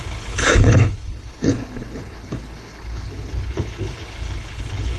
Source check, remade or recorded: remade